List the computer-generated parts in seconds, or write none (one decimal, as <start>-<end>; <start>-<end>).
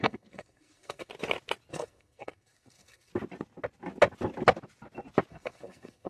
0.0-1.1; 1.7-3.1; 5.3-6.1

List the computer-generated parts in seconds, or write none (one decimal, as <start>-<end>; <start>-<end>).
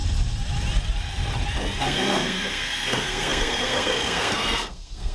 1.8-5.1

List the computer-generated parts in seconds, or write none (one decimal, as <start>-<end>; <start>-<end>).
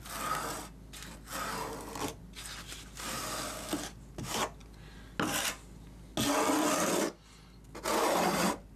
none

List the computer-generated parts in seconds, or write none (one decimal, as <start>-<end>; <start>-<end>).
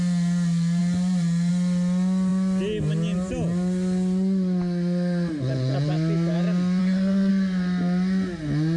6.8-7.3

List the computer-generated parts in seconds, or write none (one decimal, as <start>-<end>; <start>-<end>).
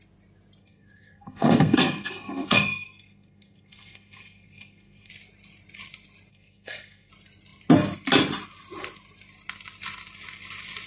0.6-5.1; 6.3-7.1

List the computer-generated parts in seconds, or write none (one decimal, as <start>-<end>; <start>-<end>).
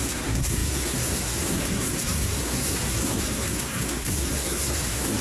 0.0-5.2